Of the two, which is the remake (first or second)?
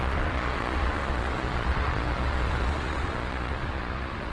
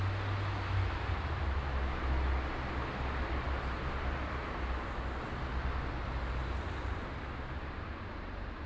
first